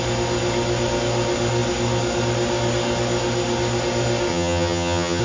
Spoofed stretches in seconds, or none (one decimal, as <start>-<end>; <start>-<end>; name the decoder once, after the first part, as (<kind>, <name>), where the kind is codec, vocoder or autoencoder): 4.3-5.2 (vocoder, HiFi-GAN)